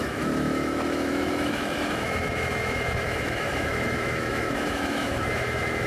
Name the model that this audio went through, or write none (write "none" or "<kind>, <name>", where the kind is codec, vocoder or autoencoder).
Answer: autoencoder, DAC-VAE